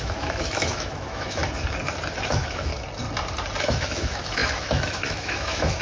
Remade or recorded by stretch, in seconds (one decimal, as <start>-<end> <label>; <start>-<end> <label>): 0.0-1.4 remade; 1.4-2.3 recorded; 2.3-2.7 remade; 2.7-3.6 recorded; 3.6-5.8 remade